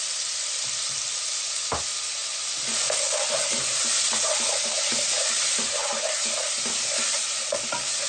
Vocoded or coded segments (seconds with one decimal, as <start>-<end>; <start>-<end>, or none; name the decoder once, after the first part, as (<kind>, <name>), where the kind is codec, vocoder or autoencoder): none